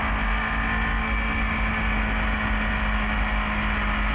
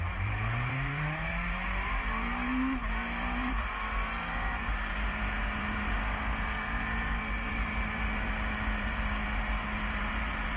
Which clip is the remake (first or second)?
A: second